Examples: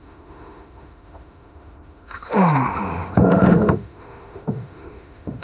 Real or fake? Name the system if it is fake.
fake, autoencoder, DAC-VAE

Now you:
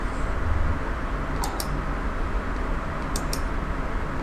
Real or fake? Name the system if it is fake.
real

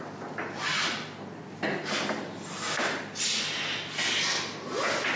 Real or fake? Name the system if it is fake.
real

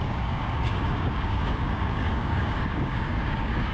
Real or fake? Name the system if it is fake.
fake, codec, DAC